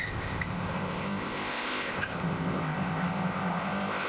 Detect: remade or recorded remade